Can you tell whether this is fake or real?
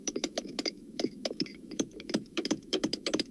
fake